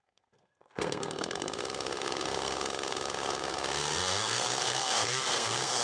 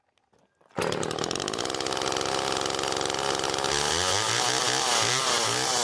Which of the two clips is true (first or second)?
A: second